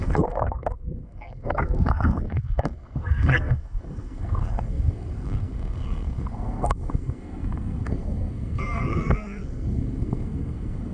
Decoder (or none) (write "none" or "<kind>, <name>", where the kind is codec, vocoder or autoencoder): codec, SNAC